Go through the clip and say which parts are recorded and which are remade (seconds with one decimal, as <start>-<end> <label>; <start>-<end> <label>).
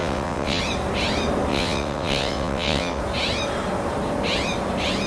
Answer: 0.0-0.6 remade; 0.6-1.5 recorded; 1.5-3.0 remade; 3.0-5.1 recorded